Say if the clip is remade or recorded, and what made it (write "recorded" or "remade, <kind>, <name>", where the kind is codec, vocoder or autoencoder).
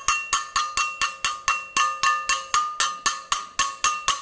recorded